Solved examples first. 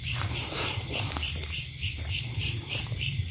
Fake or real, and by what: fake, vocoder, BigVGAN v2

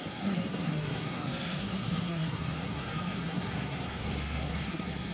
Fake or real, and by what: fake, codec, SNAC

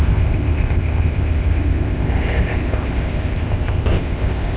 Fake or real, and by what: fake, codec, ZipCodec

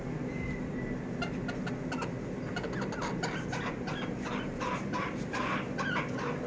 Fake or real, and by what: real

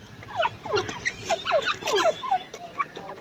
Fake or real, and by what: fake, vocoder, BigVGAN v2